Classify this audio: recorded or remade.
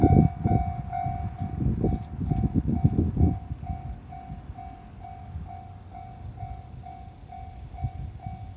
recorded